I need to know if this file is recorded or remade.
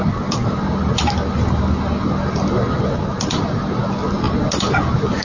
recorded